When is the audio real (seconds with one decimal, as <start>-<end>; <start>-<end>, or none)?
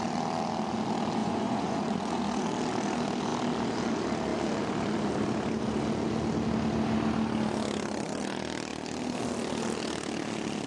0.0-1.2; 2.2-10.7